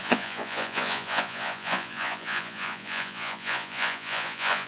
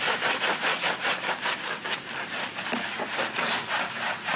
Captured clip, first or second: second